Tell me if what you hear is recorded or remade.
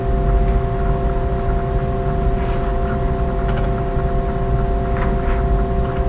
recorded